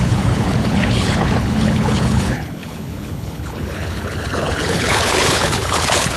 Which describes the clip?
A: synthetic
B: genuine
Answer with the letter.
A